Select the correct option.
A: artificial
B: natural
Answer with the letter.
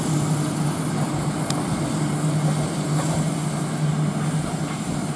B